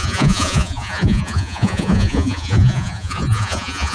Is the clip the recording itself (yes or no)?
no